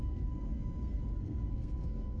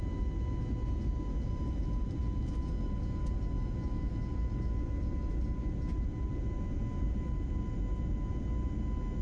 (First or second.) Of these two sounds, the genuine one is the second